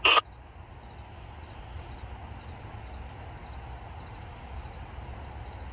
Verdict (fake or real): real